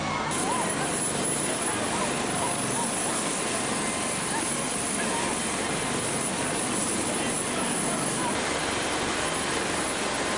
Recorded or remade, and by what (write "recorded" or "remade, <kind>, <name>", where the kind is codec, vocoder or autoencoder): recorded